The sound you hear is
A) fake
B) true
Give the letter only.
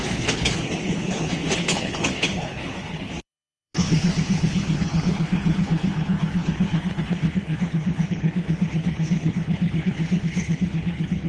A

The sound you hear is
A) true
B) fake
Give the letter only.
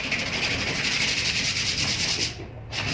A